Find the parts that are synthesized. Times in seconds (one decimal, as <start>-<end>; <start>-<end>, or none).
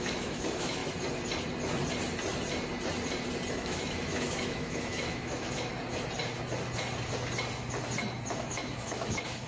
0.0-0.8; 3.5-5.7; 8.4-9.5